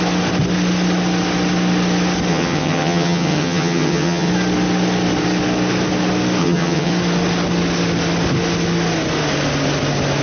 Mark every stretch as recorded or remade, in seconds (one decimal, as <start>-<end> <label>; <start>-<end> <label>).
0.0-2.3 recorded; 2.3-4.3 remade; 4.3-6.4 recorded; 6.4-6.9 remade; 6.9-10.2 recorded